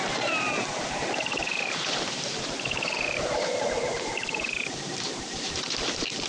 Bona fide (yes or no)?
no